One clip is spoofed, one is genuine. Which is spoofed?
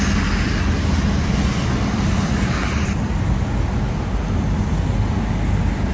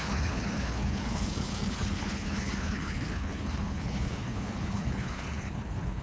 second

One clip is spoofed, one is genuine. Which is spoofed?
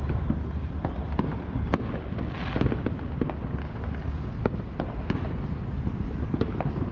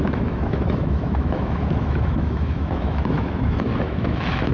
second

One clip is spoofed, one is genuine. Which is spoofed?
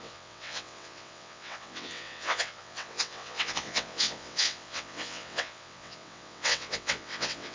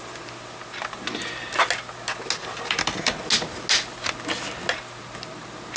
first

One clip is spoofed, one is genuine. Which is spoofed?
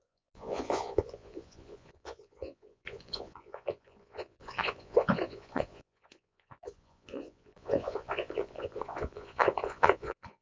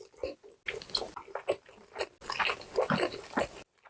first